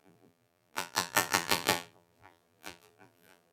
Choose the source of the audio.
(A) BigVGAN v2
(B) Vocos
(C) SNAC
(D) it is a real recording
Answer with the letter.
A